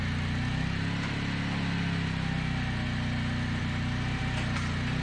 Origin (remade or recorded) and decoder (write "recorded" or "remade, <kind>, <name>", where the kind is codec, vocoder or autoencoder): recorded